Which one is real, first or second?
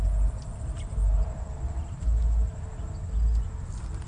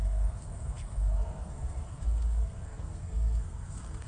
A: first